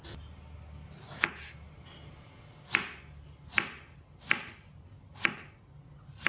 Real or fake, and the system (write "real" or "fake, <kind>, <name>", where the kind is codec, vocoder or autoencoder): real